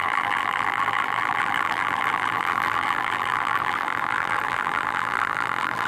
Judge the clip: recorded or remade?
remade